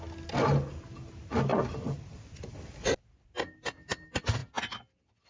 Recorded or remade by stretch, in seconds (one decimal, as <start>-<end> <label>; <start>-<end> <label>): 0.0-5.3 recorded